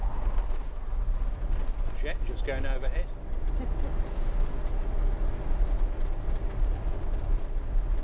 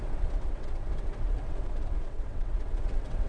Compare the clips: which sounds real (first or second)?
first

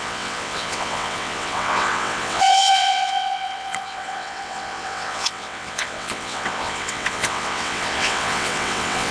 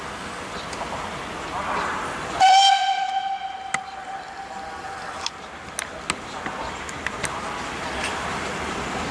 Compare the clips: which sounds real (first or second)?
second